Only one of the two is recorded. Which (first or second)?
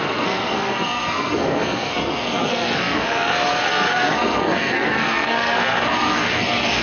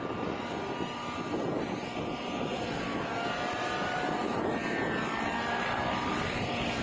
second